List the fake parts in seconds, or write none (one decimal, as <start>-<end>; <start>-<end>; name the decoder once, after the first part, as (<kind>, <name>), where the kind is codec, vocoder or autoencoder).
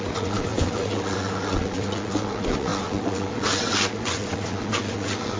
0.0-5.4 (vocoder, WaveNeXt)